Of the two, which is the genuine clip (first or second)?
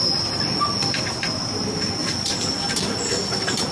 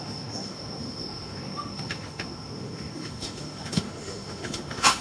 first